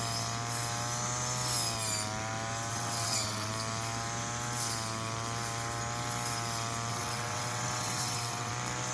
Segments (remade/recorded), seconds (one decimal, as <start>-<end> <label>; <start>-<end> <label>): 0.0-2.7 recorded; 2.7-3.5 remade; 3.5-6.9 recorded; 6.9-8.5 remade; 8.5-8.9 recorded